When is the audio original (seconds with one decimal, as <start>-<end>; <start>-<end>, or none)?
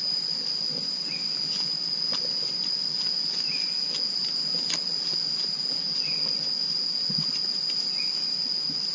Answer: 0.0-8.9